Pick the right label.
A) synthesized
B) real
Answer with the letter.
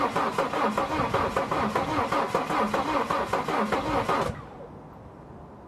B